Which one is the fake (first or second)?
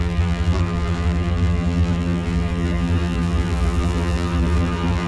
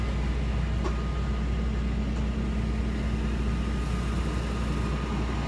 first